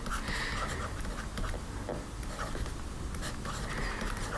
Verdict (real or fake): real